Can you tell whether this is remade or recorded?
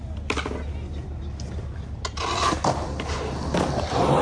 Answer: recorded